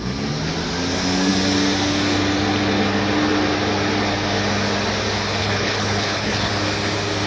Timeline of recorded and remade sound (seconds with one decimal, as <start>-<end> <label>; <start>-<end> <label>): 0.0-5.4 recorded; 5.4-6.5 remade; 6.5-7.3 recorded